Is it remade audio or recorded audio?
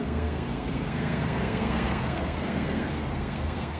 remade